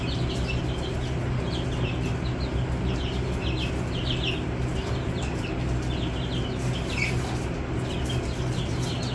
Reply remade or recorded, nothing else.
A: recorded